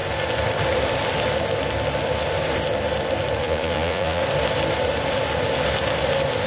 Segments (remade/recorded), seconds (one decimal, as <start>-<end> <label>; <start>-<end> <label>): 0.0-3.4 recorded; 3.4-4.2 remade; 4.2-6.5 recorded